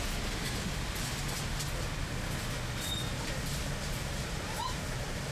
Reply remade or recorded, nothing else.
recorded